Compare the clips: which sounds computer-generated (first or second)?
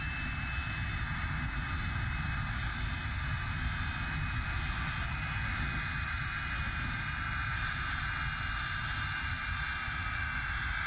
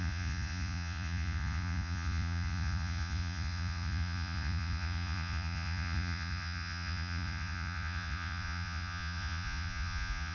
second